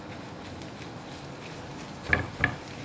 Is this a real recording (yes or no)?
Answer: yes